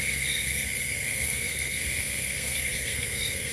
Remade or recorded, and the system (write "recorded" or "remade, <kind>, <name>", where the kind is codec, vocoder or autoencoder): remade, codec, SNAC